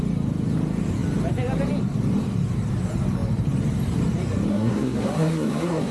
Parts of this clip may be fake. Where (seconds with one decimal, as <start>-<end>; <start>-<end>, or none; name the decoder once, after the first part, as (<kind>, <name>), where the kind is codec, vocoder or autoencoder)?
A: 4.5-5.9 (codec, SNAC)